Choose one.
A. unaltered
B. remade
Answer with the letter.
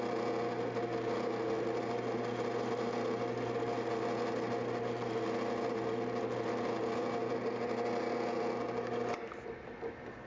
A